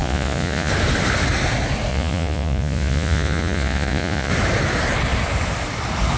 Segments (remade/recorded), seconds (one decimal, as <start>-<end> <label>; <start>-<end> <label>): 0.0-0.7 remade; 0.7-1.9 recorded; 1.9-4.3 remade; 4.3-6.2 recorded